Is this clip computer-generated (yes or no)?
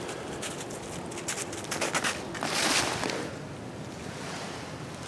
no